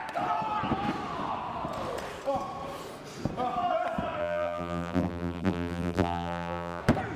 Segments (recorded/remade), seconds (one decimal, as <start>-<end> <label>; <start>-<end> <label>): 0.0-4.2 recorded; 4.2-6.8 remade; 6.8-7.2 recorded